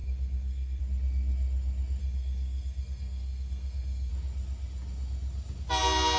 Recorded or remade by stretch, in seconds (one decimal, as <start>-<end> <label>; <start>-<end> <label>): 0.0-0.8 remade; 0.8-2.0 recorded; 2.0-4.1 remade; 4.1-6.2 recorded